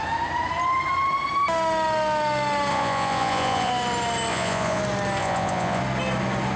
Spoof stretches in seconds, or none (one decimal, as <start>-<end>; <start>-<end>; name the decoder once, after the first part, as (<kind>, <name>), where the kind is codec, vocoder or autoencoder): 2.7-3.7 (vocoder, Vocos); 4.3-4.8; 5.2-5.8